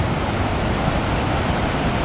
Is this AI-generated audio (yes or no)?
no